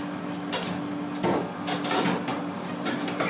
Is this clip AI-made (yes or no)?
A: no